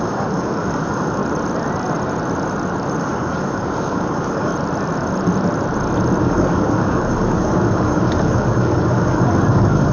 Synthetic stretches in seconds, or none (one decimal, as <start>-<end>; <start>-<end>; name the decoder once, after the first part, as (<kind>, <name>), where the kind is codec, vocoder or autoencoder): 0.0-1.2 (codec, DAC); 3.0-4.5; 6.2-9.9